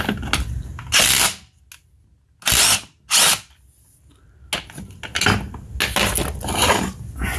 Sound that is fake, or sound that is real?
real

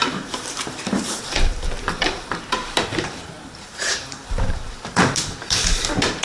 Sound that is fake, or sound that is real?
fake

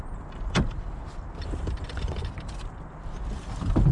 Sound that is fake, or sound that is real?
fake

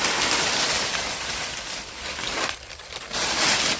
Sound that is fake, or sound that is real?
fake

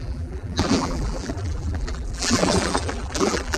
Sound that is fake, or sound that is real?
fake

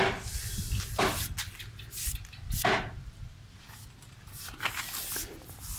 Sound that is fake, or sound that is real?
real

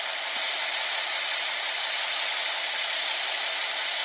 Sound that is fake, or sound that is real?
real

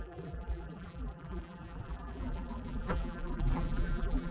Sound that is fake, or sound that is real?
fake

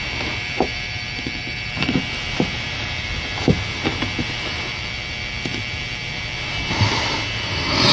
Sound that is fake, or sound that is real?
fake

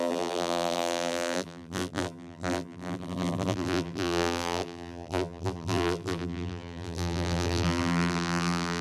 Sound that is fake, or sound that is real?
fake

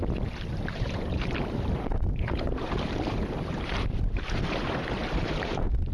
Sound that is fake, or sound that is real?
fake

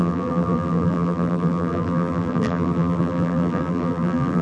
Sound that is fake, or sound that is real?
fake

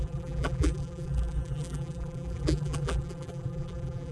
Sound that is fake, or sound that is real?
fake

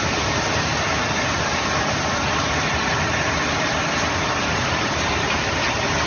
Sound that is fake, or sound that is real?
fake